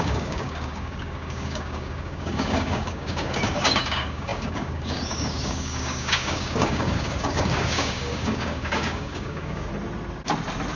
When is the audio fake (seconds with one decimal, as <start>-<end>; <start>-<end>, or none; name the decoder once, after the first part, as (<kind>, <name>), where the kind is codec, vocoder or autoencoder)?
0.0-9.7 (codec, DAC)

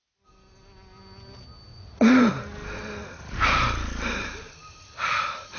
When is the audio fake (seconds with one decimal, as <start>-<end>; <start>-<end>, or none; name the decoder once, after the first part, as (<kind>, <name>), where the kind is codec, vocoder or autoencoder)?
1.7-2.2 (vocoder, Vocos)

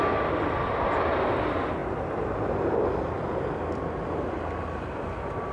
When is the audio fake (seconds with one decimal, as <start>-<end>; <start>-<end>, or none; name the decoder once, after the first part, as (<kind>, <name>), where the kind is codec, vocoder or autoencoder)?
none